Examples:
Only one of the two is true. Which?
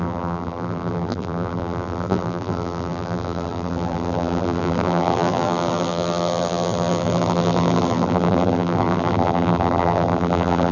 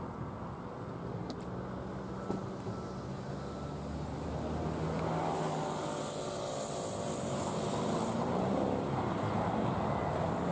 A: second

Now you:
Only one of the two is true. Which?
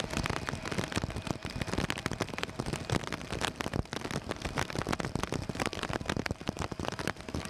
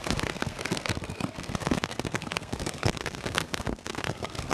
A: first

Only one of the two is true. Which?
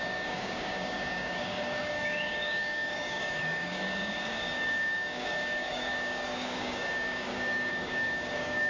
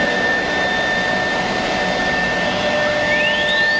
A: second